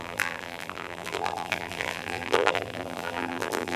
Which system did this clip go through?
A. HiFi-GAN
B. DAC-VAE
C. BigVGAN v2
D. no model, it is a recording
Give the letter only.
C